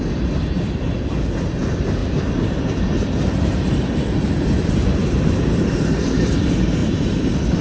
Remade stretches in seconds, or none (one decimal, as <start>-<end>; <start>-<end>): 2.0-6.3; 6.8-7.6